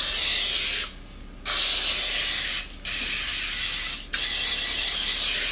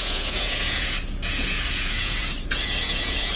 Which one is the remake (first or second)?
second